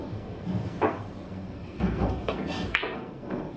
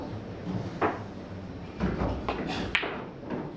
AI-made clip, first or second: first